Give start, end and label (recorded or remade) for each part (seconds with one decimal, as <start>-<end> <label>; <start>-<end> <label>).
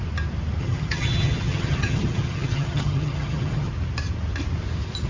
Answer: 0.0-0.6 recorded; 0.6-3.7 remade; 3.7-5.1 recorded